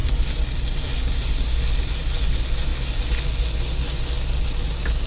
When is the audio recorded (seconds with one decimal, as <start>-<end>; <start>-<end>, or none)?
1.5-5.1